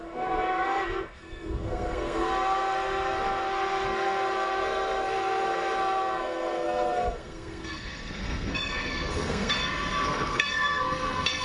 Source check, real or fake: fake